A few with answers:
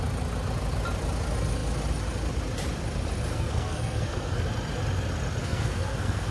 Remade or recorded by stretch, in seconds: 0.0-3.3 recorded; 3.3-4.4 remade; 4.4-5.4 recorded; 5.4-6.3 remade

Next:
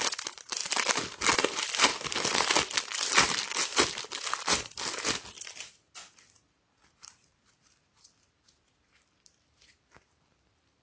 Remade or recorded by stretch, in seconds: 0.0-0.6 remade; 0.6-1.3 recorded; 1.3-1.9 remade; 1.9-2.5 recorded; 2.5-3.7 remade; 3.7-5.6 recorded; 5.6-10.8 remade

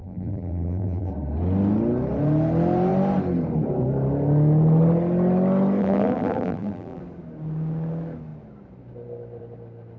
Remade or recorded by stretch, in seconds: 0.0-1.1 remade; 1.1-5.8 recorded; 5.8-7.0 remade; 7.0-10.0 recorded

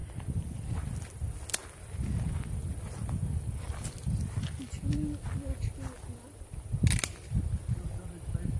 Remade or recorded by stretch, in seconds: 0.0-8.6 recorded

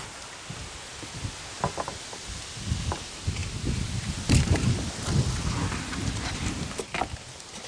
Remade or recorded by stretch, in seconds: 0.0-7.7 recorded